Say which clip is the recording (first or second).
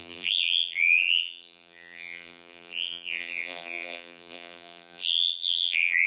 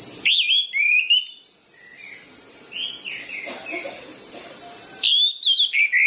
second